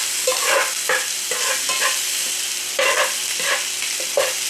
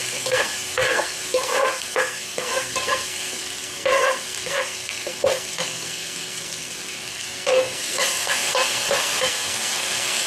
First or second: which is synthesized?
second